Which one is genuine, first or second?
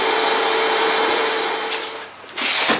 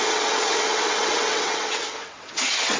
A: first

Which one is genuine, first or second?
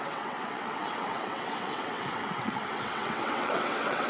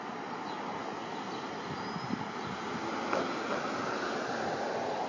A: second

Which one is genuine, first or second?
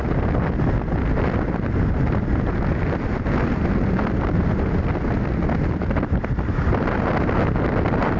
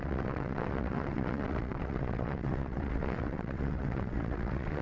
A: first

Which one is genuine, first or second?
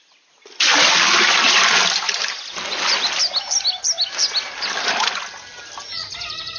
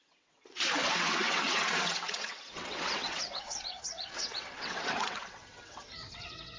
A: first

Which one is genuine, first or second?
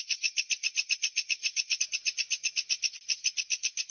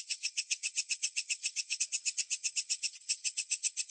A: first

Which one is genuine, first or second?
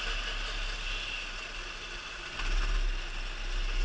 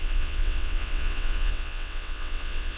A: first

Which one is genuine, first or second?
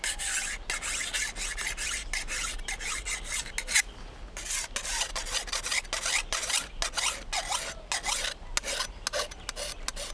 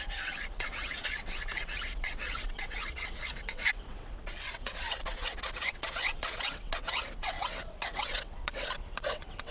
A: first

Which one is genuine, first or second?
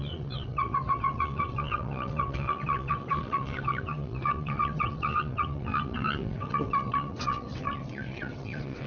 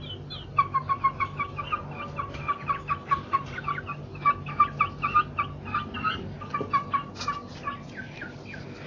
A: second